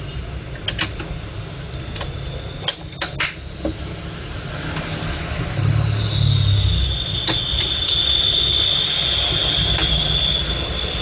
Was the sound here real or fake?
real